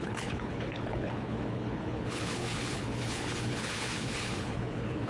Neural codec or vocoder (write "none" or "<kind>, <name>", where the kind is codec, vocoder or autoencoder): codec, HILCodec